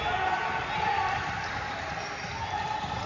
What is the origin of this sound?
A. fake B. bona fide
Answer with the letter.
B